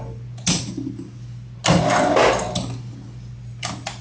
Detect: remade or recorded recorded